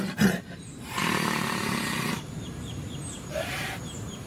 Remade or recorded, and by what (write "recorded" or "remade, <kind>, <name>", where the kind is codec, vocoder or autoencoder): remade, vocoder, BigVGAN v2